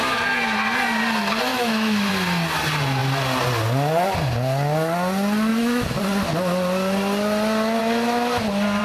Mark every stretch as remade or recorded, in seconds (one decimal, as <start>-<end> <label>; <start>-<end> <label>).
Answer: 0.0-1.5 recorded; 1.5-2.1 remade; 2.1-5.5 recorded; 5.5-6.0 remade; 6.0-8.8 recorded